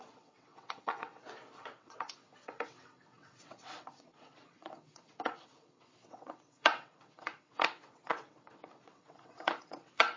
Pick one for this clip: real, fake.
fake